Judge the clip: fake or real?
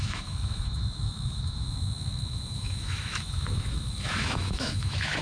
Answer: fake